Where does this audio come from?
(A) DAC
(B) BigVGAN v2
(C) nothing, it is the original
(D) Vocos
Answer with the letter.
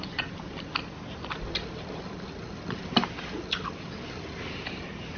C